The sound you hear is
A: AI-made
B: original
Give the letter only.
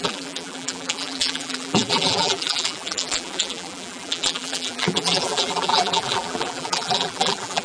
A